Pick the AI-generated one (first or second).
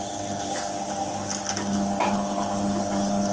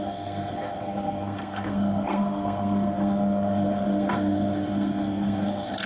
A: second